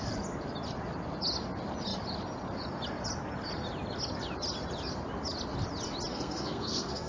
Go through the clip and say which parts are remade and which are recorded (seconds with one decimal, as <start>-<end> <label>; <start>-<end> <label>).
0.0-6.1 recorded; 6.1-7.1 remade